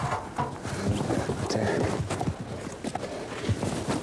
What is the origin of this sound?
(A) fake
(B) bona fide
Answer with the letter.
B